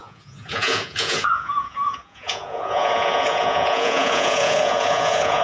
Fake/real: fake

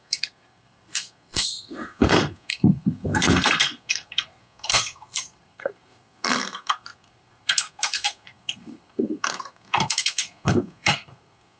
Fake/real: fake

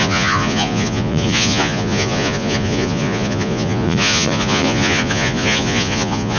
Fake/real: fake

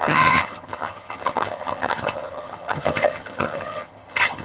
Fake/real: fake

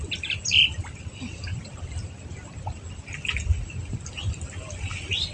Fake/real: real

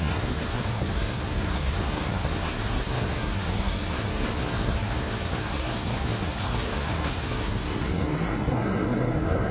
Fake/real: fake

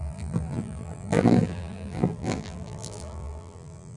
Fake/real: fake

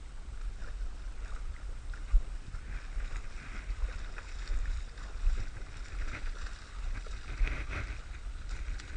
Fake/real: real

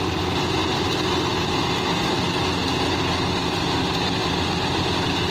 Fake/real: real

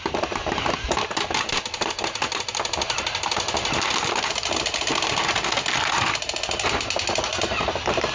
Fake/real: real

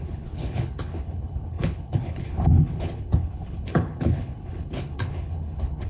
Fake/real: fake